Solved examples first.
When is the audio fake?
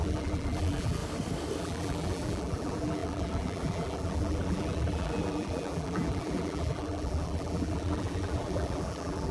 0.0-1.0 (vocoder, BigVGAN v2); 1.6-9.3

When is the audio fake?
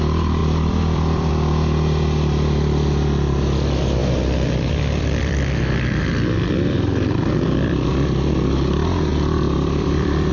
0.4-1.3 (vocoder, BigVGAN v2); 4.0-7.9; 9.1-10.3